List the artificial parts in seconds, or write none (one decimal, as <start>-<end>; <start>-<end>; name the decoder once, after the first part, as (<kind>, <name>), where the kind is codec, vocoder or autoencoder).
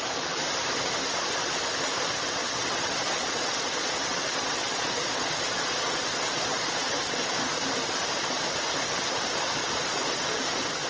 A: 2.4-7.5 (vocoder, Vocos); 9.6-10.4